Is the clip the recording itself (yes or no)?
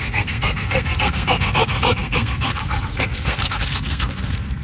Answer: no